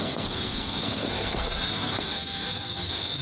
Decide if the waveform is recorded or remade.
remade